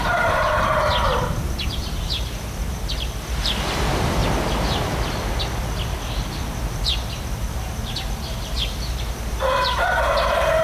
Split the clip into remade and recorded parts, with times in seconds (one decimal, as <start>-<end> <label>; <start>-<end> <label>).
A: 0.0-4.2 remade; 4.2-6.4 recorded; 6.4-10.6 remade